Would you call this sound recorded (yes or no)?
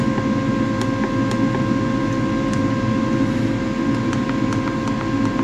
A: yes